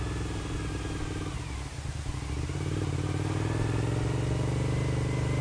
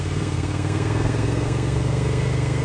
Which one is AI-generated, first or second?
second